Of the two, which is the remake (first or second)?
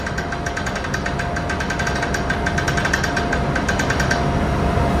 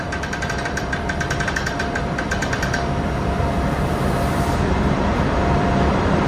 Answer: second